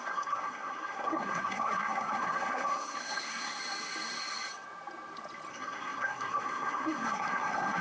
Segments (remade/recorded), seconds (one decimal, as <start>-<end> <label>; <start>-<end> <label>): 0.0-3.6 remade; 3.6-5.5 recorded; 5.5-7.8 remade